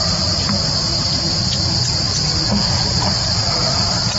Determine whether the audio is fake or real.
fake